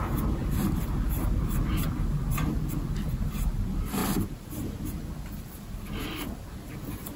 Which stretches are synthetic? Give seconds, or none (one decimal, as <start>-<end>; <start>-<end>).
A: none